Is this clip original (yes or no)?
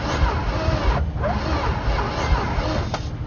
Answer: yes